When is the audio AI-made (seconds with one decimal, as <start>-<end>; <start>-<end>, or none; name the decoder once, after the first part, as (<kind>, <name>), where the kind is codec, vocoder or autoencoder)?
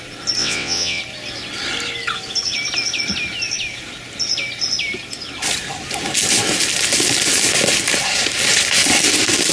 0.4-1.0 (vocoder, WaveNeXt)